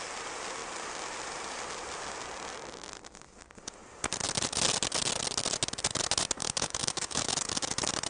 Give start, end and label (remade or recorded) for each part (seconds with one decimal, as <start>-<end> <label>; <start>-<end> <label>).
0.0-6.4 recorded; 6.4-7.3 remade; 7.3-8.1 recorded